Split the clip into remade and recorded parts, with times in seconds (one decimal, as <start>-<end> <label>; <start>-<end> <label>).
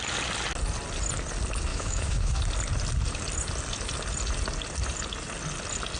0.0-1.7 recorded; 1.7-2.4 remade; 2.4-6.0 recorded